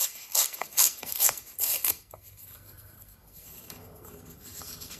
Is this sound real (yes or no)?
no